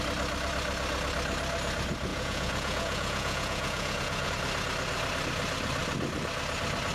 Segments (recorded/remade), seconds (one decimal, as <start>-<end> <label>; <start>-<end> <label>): 0.0-2.1 recorded; 2.1-4.3 remade; 4.3-6.9 recorded